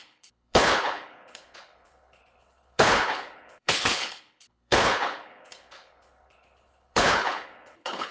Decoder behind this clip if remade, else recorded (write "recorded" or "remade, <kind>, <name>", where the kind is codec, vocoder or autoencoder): remade, codec, HILCodec